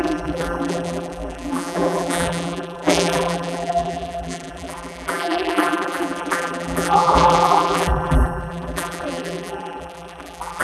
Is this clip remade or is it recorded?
remade